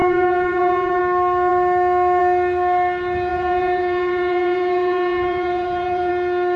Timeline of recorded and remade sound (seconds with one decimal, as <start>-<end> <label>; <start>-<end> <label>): 0.0-1.0 remade; 1.0-3.3 recorded; 3.3-6.1 remade; 6.1-6.6 recorded